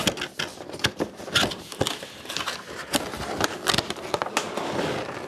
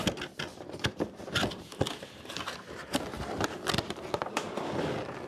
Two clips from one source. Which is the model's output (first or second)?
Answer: second